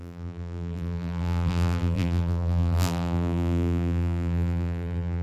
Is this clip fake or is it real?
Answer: fake